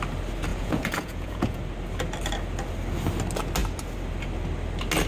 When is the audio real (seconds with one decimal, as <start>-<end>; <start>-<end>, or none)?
0.0-0.5; 1.6-5.1